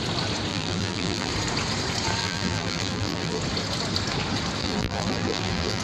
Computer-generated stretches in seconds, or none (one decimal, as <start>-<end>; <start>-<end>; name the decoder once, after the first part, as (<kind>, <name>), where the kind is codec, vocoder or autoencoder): 0.5-1.3 (vocoder, BigVGAN v2); 2.2-3.4; 4.6-5.8